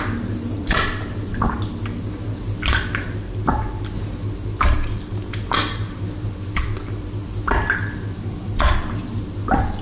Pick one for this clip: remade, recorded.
recorded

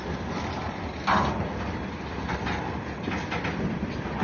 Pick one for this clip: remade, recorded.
recorded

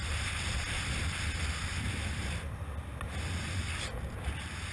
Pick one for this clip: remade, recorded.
recorded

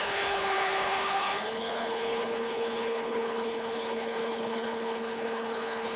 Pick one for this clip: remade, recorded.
remade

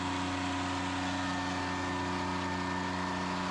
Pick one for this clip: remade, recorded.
recorded